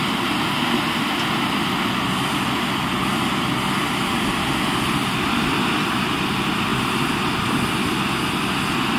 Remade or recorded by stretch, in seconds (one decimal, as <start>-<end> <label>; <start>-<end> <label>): 0.0-9.0 recorded